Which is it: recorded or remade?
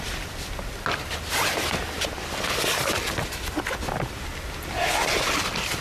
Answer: recorded